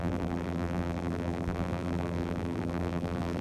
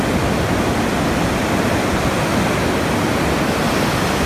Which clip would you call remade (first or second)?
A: first